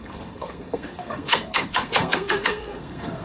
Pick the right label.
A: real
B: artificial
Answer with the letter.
B